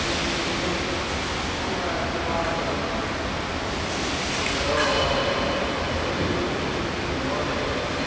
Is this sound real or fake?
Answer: real